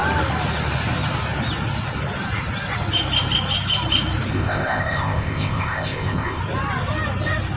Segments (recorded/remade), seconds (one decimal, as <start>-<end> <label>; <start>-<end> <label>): 0.0-4.3 recorded; 4.3-6.4 remade; 6.4-7.6 recorded